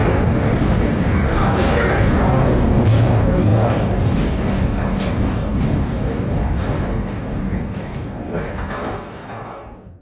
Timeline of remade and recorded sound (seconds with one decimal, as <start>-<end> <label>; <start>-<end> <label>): 0.0-10.0 remade